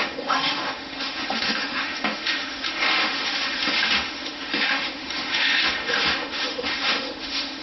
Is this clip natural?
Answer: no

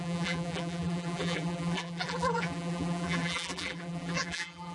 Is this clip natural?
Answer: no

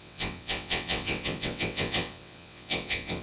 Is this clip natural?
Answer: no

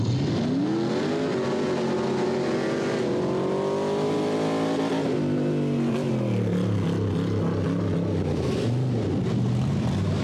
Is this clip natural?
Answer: yes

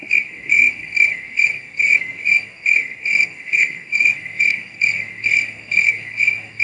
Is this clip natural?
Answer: no